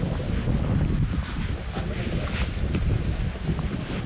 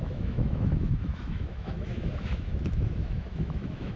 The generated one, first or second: second